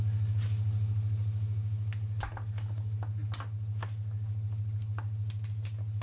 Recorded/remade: recorded